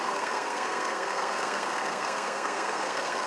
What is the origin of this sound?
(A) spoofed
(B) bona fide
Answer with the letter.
A